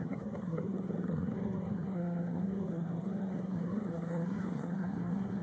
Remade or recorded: remade